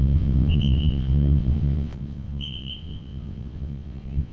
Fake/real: fake